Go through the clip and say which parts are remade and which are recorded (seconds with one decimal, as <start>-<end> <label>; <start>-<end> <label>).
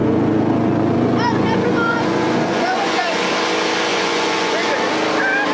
0.0-3.2 remade; 3.2-3.9 recorded; 3.9-4.9 remade; 4.9-5.5 recorded